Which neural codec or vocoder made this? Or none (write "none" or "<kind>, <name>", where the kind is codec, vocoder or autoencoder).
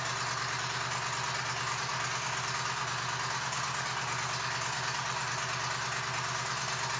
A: none